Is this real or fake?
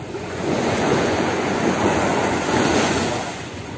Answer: fake